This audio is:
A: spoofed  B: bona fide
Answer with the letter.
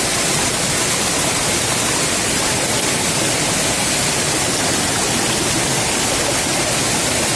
B